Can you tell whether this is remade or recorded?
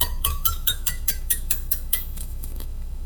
remade